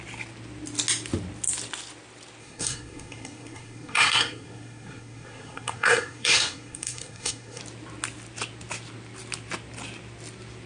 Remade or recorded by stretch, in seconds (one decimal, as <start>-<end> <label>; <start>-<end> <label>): 0.0-2.4 recorded; 2.4-7.6 remade; 7.6-10.7 recorded